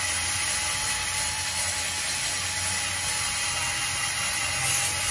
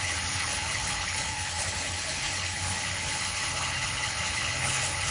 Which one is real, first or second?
first